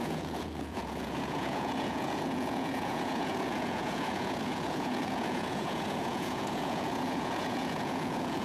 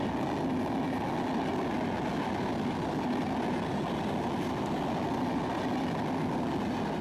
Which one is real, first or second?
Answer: second